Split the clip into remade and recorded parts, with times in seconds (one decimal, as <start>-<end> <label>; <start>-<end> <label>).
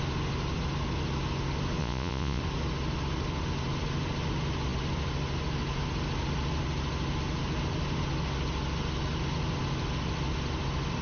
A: 0.0-1.8 recorded; 1.8-2.4 remade; 2.4-11.0 recorded